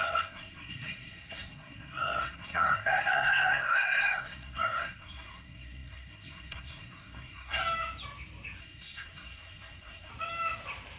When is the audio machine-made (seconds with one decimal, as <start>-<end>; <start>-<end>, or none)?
0.0-7.6; 8.6-10.1